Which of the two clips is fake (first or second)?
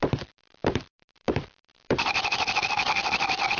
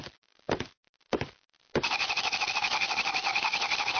first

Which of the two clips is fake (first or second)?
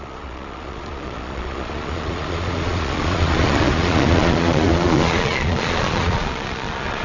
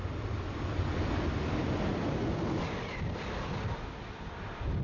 first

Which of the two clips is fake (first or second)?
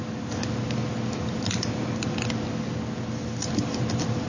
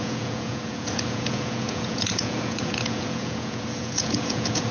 second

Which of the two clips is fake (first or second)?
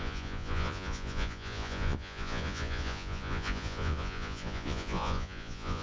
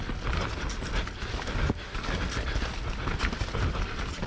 first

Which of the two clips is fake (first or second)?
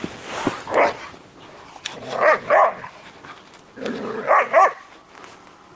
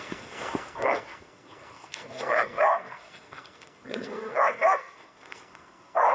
second